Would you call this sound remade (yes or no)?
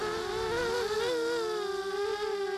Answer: no